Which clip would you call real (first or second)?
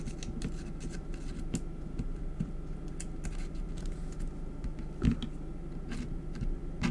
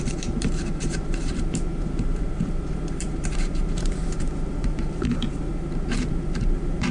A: first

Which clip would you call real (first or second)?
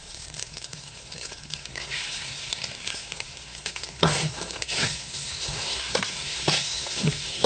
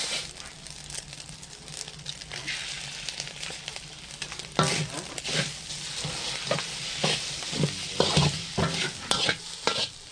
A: second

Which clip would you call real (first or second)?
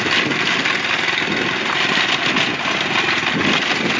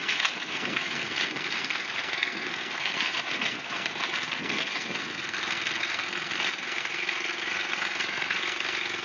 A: first